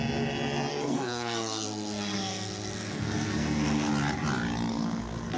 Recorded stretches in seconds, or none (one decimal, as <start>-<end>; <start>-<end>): 0.0-0.7; 3.9-4.7